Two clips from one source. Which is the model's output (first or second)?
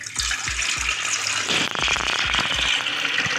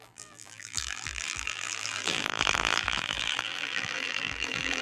second